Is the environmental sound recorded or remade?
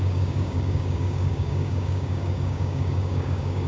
remade